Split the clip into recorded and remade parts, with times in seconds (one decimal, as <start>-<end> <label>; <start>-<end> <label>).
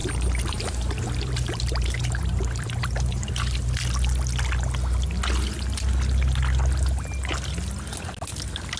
0.0-3.3 remade; 3.3-8.8 recorded